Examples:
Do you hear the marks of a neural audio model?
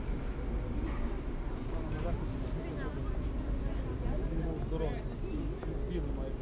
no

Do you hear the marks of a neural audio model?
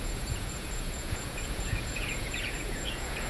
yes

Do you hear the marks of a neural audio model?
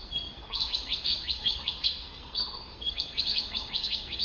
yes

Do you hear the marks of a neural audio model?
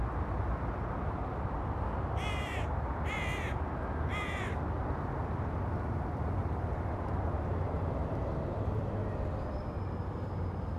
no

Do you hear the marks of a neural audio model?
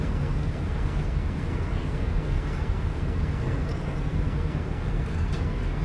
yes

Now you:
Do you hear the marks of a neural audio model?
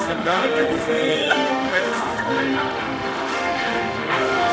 yes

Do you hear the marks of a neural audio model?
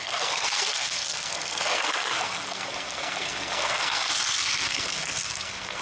yes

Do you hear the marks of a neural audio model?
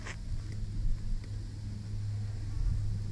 no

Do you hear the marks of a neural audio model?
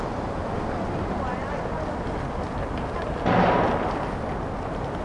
no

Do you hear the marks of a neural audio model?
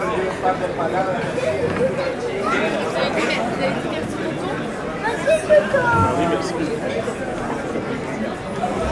no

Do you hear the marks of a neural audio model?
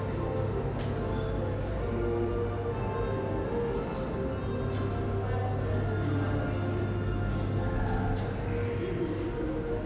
no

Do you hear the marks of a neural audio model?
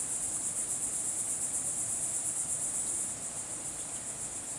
no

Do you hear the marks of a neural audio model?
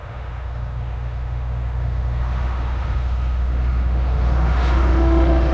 yes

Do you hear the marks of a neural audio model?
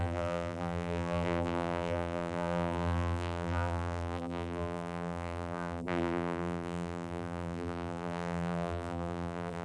yes